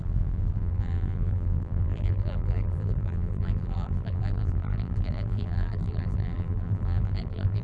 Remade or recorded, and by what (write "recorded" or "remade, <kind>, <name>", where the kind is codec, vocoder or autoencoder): remade, vocoder, BigVGAN v2